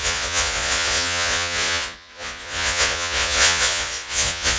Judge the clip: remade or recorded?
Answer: remade